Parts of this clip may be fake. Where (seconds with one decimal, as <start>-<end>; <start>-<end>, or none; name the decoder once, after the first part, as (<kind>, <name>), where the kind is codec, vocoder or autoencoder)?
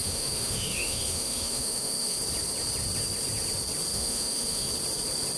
0.0-2.2 (autoencoder, DAC-VAE); 3.9-4.7